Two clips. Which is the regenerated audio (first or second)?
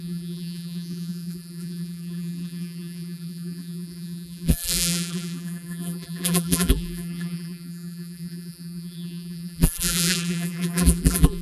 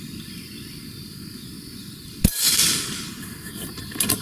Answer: first